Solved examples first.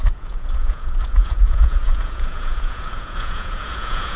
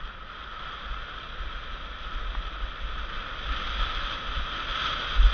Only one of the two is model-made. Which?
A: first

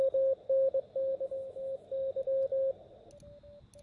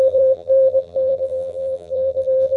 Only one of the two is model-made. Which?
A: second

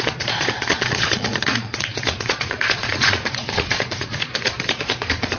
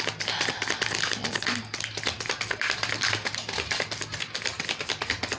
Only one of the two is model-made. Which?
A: first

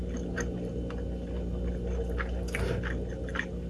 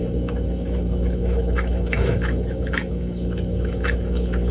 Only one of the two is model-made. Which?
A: second